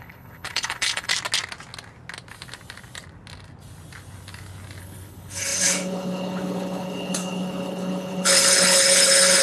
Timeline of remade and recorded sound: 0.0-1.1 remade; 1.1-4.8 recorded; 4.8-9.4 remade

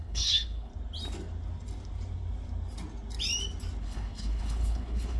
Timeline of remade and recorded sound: 0.0-0.7 remade; 0.7-3.8 recorded; 3.8-5.2 remade

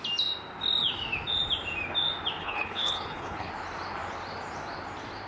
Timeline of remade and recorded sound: 0.0-2.4 recorded; 2.4-3.5 remade; 3.5-5.3 recorded